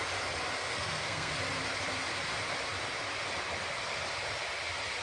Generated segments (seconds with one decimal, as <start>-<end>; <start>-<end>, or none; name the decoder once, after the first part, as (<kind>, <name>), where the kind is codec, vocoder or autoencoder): 0.6-1.3 (codec, SNAC)